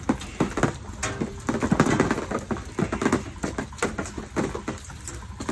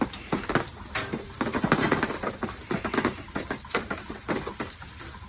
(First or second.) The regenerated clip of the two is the second